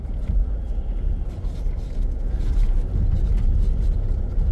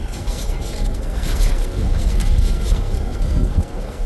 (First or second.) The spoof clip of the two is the second